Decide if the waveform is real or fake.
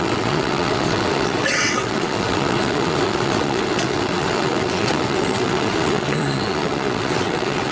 fake